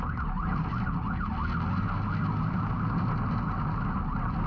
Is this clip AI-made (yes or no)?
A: no